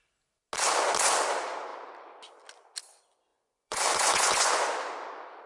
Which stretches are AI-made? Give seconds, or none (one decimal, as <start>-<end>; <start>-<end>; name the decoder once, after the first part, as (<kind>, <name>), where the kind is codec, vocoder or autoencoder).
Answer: 3.3-4.5 (vocoder, Vocos)